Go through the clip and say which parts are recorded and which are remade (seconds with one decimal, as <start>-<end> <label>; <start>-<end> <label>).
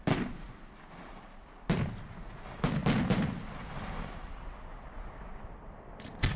0.0-6.4 recorded